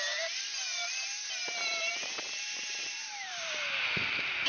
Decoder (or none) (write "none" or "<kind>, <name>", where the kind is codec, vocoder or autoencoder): vocoder, BigVGAN v2